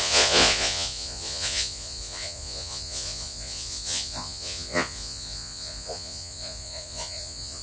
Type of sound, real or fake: fake